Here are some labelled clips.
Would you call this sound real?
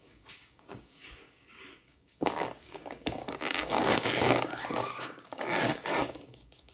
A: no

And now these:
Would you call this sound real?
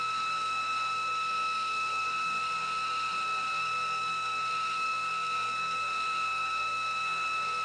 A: no